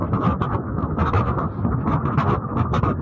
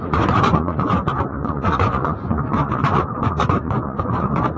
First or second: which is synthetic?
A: second